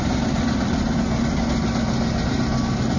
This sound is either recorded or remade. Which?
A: recorded